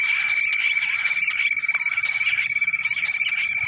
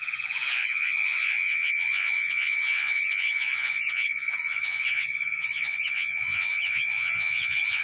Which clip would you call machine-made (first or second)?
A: second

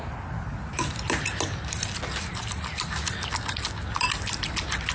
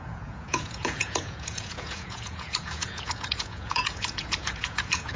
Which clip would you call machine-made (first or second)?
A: second